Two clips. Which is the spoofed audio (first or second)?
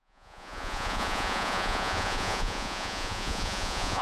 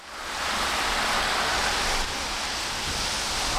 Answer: first